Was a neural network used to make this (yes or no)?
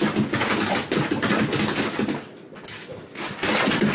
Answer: no